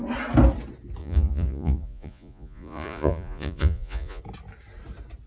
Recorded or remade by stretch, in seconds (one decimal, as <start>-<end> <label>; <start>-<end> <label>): 0.0-1.0 recorded; 1.0-4.2 remade; 4.2-5.3 recorded